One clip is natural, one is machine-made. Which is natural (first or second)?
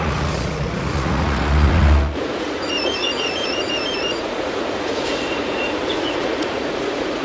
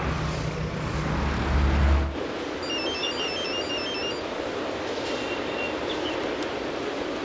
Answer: second